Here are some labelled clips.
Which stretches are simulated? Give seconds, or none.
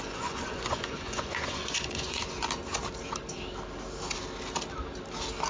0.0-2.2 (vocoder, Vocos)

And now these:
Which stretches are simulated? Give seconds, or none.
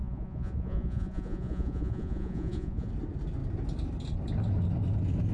0.0-2.9 (vocoder, Vocos)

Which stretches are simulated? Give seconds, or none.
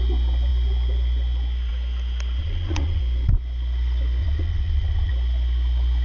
2.4-3.0 (vocoder, Vocos); 4.2-5.1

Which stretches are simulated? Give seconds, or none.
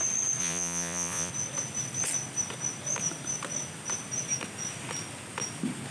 0.4-1.3 (vocoder, Vocos)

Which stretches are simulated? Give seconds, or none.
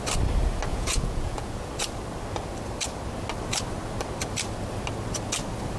0.7-1.7 (vocoder, Vocos)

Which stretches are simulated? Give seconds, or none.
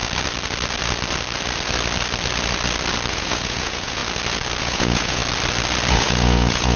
3.1-4.0 (vocoder, Vocos); 4.6-5.2; 5.9-6.8